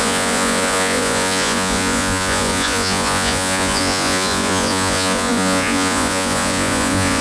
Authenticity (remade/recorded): remade